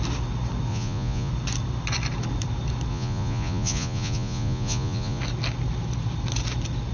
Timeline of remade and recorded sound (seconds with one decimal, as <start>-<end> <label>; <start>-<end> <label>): 0.0-0.7 recorded; 0.7-1.3 remade; 1.3-2.9 recorded; 2.9-5.2 remade; 5.2-6.9 recorded